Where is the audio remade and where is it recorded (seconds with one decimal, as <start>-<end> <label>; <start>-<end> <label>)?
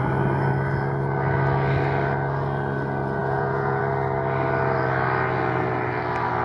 0.0-3.2 recorded; 3.2-3.8 remade; 3.8-6.4 recorded